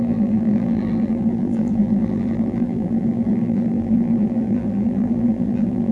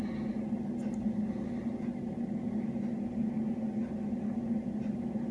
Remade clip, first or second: first